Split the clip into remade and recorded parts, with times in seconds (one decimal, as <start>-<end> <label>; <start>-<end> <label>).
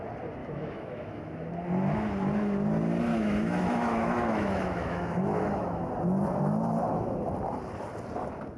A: 0.0-0.4 recorded; 0.4-1.3 remade; 1.3-3.1 recorded; 3.1-5.8 remade; 5.8-8.6 recorded